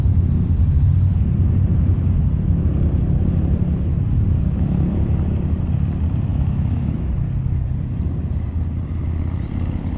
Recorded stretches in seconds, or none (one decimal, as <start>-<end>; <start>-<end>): 0.0-6.3; 7.1-10.0